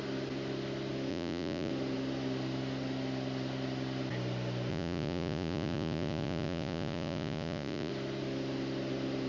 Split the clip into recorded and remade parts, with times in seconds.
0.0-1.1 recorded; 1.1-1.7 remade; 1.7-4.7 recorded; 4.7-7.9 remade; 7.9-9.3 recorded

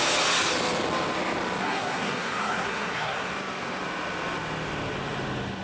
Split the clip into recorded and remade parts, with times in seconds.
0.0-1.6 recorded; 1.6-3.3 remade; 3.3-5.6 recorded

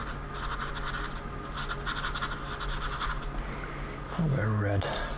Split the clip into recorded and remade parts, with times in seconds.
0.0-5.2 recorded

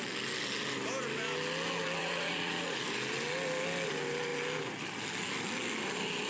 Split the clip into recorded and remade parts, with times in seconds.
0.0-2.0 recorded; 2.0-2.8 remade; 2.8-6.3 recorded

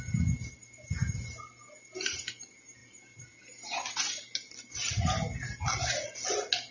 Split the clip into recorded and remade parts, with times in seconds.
0.0-6.7 recorded

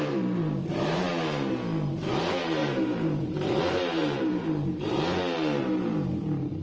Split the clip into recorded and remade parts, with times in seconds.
0.0-1.1 remade; 1.1-2.2 recorded; 2.2-4.9 remade; 4.9-5.6 recorded; 5.6-6.6 remade